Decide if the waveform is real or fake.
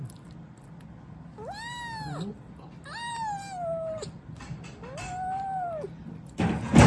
real